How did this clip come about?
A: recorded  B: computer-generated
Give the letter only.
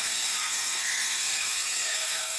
B